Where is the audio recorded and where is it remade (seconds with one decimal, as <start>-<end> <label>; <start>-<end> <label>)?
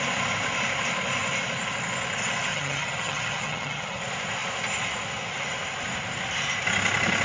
0.0-2.5 recorded; 2.5-4.0 remade; 4.0-7.2 recorded